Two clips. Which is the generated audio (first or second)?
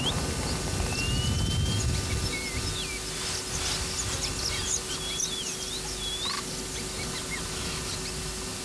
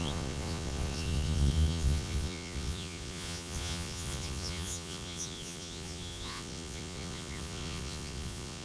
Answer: second